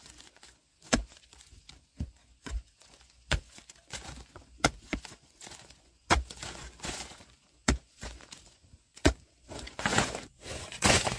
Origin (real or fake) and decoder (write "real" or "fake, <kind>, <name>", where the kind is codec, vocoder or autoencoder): fake, vocoder, Vocos